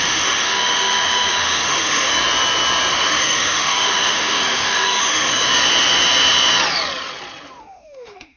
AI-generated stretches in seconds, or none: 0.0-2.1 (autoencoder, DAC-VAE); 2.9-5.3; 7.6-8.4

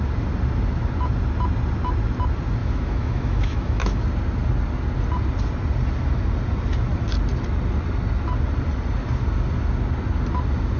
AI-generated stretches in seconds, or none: 2.6-4.0 (autoencoder, DAC-VAE)

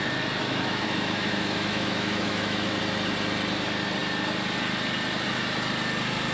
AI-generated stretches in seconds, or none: 0.4-2.8 (autoencoder, DAC-VAE)

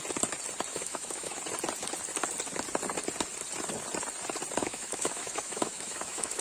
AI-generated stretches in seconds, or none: 0.7-1.4 (autoencoder, DAC-VAE); 4.6-6.4

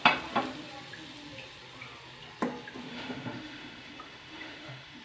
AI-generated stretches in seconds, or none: 2.9-5.0 (autoencoder, DAC-VAE)

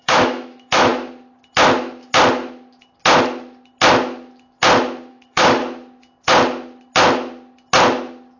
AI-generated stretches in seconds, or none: 0.0-0.9 (autoencoder, DAC-VAE); 5.1-5.6